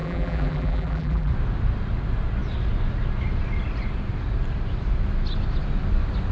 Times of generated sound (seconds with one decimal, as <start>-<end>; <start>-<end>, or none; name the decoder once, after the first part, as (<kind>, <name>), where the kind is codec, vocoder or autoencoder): 0.0-1.3 (vocoder, BigVGAN v2)